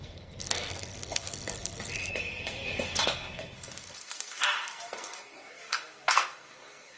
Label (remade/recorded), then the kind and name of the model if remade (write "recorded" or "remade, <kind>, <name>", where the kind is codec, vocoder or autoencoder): remade, codec, SNAC